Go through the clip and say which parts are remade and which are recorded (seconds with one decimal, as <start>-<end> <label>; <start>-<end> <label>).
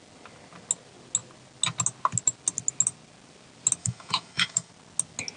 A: 0.0-3.8 recorded; 3.8-4.7 remade; 4.7-5.4 recorded